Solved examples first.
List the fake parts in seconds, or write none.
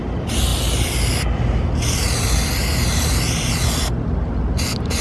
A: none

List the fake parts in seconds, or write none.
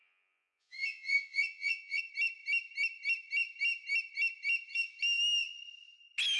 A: 0.0-2.0 (vocoder, Vocos)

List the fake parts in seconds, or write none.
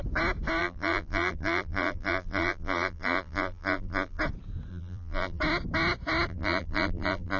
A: 0.6-4.2 (vocoder, BigVGAN v2); 4.7-5.4; 6.3-7.4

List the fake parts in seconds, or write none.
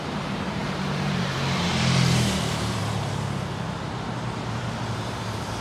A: 0.0-2.8 (vocoder, BigVGAN v2); 4.6-5.6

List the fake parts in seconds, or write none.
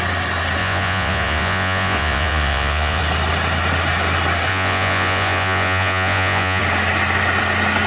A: 0.6-3.0 (vocoder, Vocos); 4.5-6.6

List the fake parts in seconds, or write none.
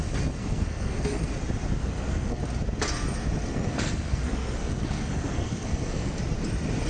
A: 0.4-1.3 (codec, SNAC); 1.8-2.4; 3.5-6.2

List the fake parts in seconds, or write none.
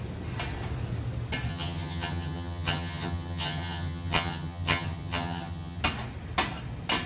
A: 1.5-5.8 (vocoder, HiFi-GAN)